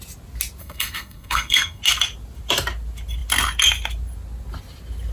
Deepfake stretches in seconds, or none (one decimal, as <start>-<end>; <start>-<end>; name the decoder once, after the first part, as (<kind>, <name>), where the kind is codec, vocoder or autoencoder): 0.6-1.8 (codec, SNAC)